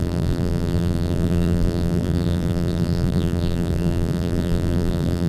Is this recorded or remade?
remade